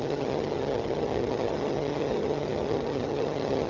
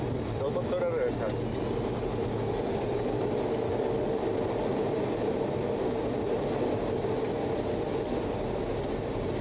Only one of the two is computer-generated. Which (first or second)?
first